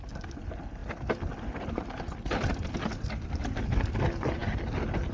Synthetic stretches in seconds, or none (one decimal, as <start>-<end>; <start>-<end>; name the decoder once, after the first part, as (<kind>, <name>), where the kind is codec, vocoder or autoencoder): none